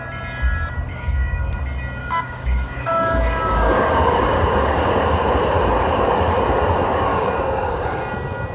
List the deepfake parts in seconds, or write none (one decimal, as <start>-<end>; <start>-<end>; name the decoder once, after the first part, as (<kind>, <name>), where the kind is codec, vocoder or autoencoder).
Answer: 0.9-1.6 (codec, DAC); 2.0-5.0; 7.1-8.0